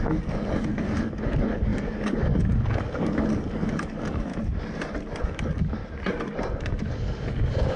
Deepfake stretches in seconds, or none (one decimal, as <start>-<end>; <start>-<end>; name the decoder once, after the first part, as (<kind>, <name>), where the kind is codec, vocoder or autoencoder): 0.0-4.3 (codec, DAC); 5.2-5.8; 6.5-7.8